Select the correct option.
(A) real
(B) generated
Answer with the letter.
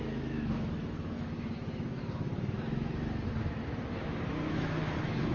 B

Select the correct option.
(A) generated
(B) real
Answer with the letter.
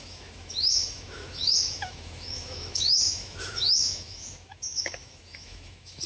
A